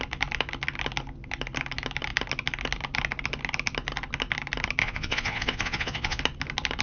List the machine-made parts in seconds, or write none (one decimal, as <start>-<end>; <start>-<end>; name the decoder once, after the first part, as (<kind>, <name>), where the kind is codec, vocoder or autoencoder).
4.8-6.2 (vocoder, Vocos)